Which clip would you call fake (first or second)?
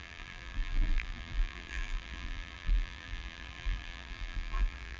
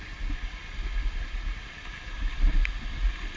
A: first